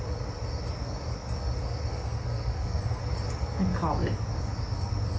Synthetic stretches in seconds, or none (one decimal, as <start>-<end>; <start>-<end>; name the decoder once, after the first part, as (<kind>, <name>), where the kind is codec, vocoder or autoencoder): 1.9-3.0 (codec, SNAC)